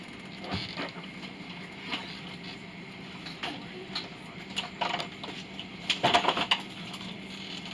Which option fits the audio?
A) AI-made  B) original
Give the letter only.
B